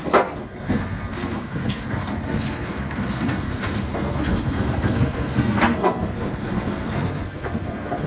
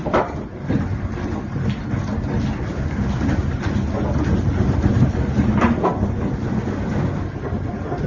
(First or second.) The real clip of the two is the second